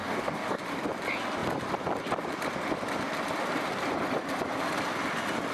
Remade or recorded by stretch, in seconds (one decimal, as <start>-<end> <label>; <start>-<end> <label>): 0.0-0.6 remade; 0.6-5.5 recorded